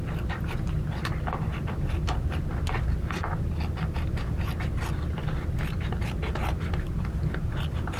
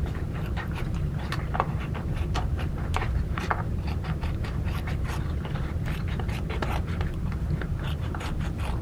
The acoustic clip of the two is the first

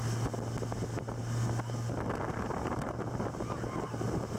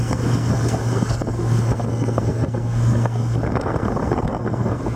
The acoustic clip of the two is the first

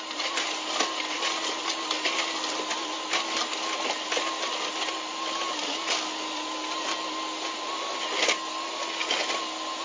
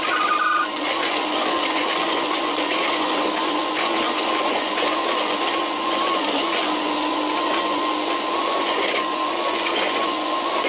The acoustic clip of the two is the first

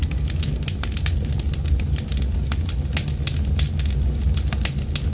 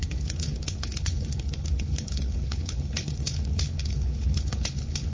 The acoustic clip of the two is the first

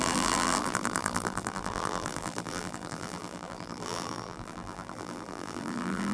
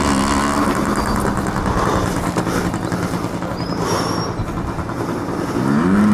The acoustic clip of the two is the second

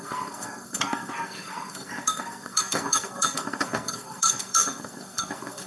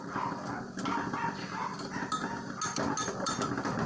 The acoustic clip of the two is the second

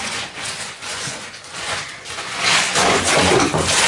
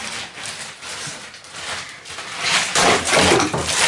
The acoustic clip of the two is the second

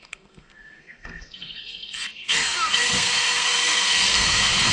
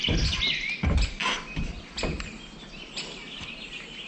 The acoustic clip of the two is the second